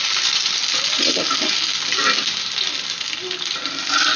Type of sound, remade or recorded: recorded